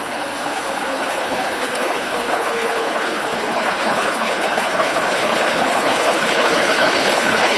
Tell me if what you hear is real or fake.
fake